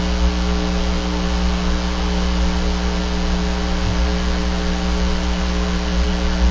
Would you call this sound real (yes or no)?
yes